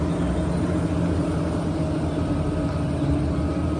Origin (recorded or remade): recorded